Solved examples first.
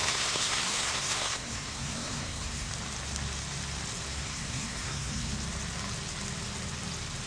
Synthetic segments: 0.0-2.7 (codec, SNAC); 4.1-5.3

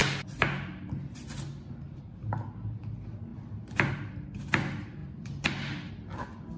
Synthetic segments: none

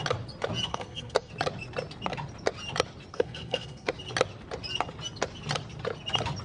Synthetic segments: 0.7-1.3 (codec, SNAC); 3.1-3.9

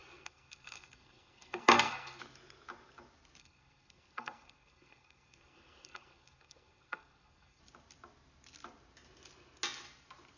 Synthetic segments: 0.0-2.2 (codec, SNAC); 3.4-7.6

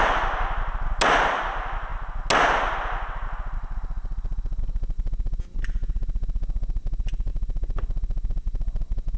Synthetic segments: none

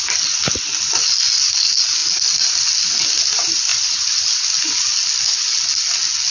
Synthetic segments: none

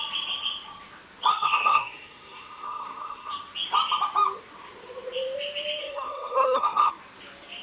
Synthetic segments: 1.3-3.3 (codec, SNAC); 5.8-6.9